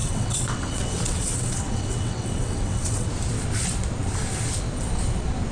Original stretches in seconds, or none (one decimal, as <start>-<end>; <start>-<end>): 3.1-5.5

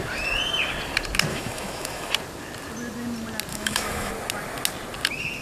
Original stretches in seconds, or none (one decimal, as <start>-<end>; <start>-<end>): 0.0-1.3; 2.1-3.5; 4.1-5.4

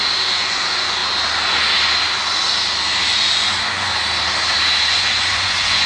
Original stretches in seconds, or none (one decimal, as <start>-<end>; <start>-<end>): 1.0-3.1; 3.9-4.9

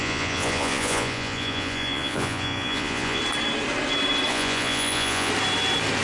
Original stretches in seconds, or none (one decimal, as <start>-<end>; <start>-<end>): 3.2-4.3; 5.3-6.0

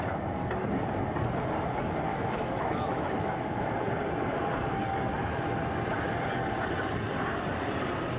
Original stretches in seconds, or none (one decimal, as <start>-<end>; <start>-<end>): 0.0-2.1; 3.7-8.2

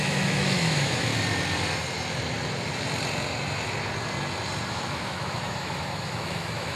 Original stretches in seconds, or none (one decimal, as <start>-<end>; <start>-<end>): 1.1-4.7